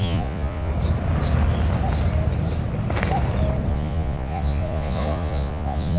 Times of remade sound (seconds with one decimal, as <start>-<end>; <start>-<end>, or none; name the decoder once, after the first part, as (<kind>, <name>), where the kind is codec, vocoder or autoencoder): 0.0-0.7 (vocoder, Vocos); 3.7-6.0